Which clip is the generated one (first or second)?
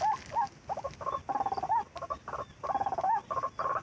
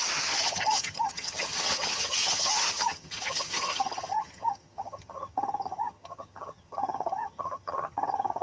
second